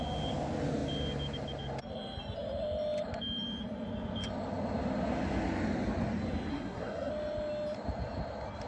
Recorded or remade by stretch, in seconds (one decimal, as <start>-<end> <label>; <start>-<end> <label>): 0.0-6.5 recorded; 6.5-7.1 remade; 7.1-8.7 recorded